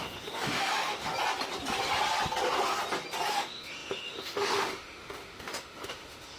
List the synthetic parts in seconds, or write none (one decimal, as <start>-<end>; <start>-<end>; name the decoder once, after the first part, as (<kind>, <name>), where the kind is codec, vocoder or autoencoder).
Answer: 0.0-1.1 (autoencoder, DAC-VAE); 3.3-6.4